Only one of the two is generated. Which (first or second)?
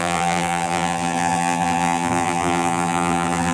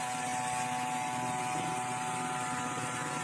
first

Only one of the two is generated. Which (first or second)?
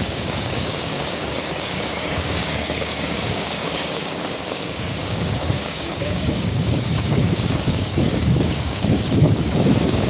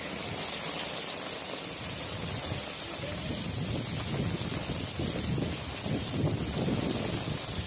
first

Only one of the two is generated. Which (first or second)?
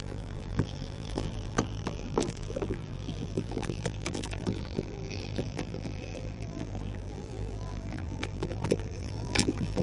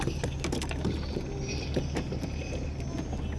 first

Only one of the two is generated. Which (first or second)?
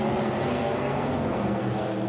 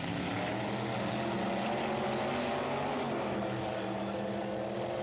first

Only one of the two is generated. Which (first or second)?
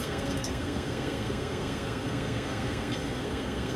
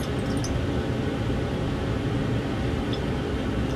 first